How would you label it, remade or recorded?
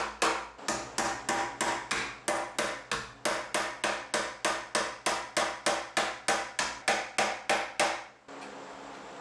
recorded